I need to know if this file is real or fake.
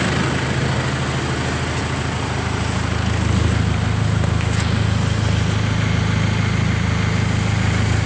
real